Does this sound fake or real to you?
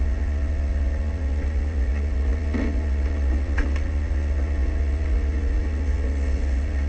fake